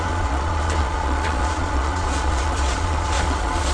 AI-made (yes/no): yes